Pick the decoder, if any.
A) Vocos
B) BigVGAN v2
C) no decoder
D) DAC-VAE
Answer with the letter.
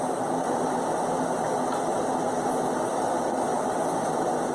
C